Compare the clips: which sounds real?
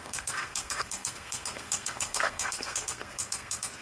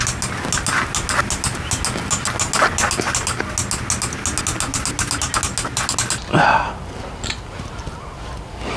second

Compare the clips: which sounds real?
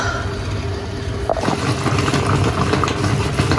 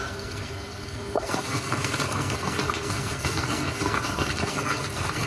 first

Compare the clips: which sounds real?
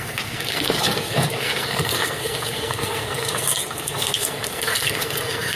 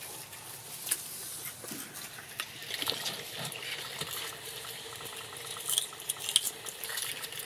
second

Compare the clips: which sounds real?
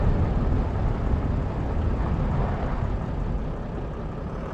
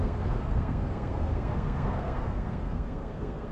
first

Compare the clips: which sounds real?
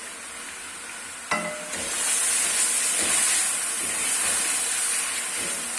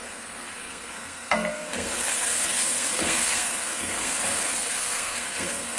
first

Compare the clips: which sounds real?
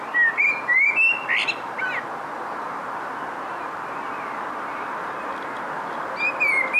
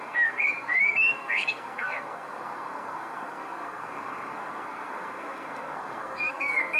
first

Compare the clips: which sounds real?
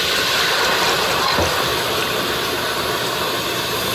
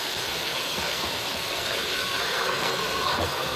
first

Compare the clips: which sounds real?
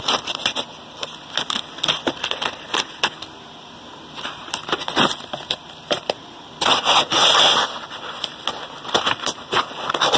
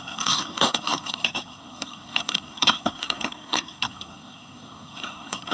first